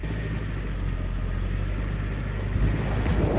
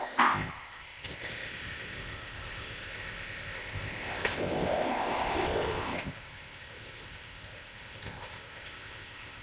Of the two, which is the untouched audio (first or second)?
first